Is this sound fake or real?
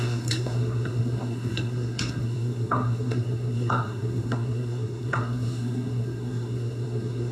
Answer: fake